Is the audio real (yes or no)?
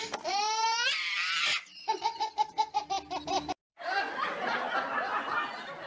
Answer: yes